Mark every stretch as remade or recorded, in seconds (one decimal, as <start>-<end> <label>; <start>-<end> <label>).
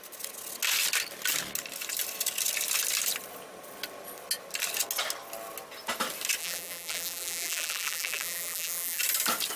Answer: 0.0-6.4 recorded; 6.4-9.0 remade; 9.0-9.6 recorded